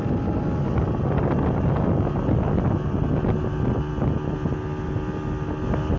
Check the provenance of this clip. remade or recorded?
recorded